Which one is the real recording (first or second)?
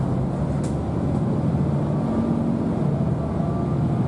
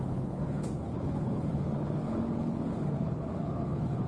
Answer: first